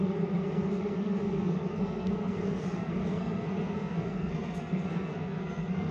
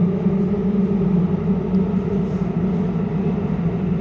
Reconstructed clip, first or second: first